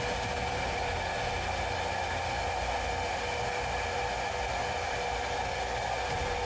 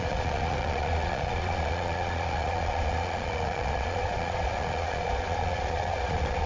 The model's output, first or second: second